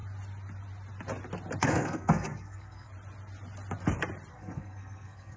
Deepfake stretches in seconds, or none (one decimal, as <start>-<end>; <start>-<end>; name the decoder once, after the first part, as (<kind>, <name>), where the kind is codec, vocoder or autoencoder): 1.6-2.9 (codec, SNAC); 4.3-5.4